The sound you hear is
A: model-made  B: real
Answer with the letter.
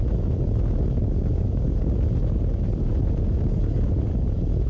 B